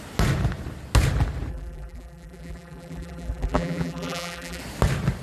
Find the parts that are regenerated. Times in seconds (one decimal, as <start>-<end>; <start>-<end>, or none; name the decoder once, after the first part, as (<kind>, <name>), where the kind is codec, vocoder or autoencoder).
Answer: 1.5-4.6 (vocoder, BigVGAN v2)